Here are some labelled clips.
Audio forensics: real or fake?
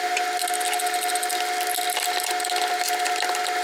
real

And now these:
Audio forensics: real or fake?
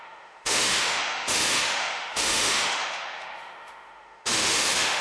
fake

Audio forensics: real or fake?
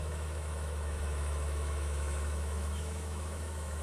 fake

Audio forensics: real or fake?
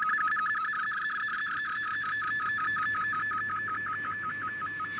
fake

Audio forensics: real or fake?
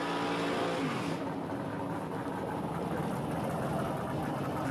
real